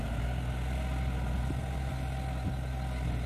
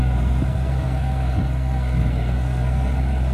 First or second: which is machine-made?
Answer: second